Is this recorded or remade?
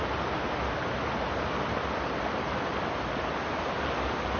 recorded